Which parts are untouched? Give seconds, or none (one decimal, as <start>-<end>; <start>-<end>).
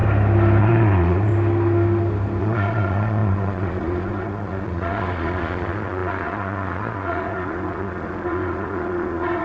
0.0-0.6; 1.3-2.4